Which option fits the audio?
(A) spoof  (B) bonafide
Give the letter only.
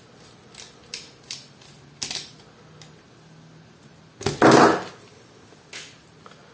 B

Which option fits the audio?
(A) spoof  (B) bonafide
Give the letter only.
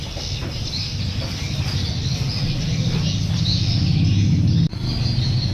B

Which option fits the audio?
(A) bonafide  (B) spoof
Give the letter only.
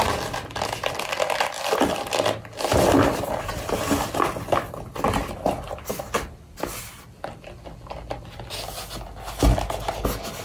A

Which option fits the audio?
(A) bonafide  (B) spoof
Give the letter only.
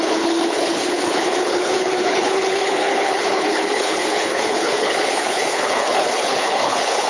B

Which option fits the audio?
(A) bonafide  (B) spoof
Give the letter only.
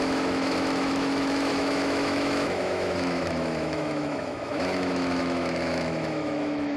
B